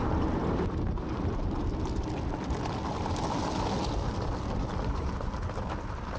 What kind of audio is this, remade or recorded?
recorded